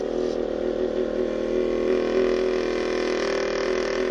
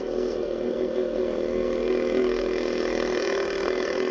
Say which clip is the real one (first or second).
first